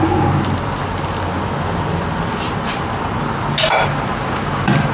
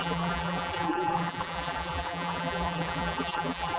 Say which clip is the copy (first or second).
second